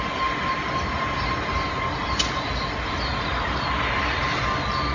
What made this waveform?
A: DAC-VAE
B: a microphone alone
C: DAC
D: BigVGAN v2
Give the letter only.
B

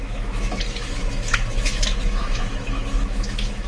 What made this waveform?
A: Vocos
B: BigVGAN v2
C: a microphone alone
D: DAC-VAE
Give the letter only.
D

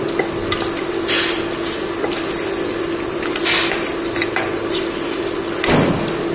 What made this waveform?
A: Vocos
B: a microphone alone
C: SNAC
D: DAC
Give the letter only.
B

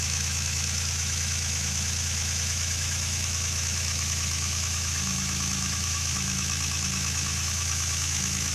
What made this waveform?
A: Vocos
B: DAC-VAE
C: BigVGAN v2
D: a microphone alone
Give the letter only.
B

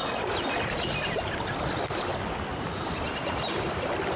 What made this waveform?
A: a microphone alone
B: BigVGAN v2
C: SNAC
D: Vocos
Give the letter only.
A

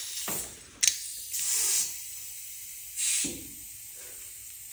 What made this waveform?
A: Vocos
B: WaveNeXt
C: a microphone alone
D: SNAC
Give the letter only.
C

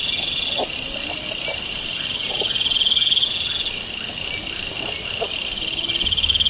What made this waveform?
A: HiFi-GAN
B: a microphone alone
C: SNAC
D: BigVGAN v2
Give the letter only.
B